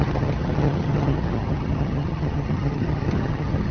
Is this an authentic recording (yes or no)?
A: no